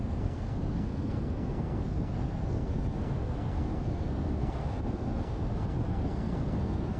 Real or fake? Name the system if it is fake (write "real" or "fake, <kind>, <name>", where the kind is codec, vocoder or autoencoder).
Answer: fake, codec, SNAC